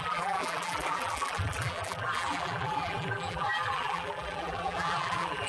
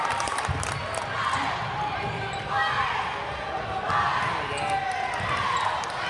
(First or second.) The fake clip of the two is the first